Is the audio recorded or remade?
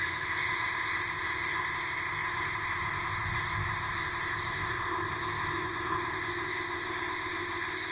remade